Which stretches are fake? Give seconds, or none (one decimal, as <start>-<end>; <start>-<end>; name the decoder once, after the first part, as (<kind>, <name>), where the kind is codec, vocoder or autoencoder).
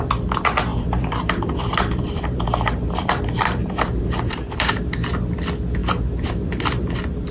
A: 0.7-5.1 (vocoder, BigVGAN v2); 5.8-6.8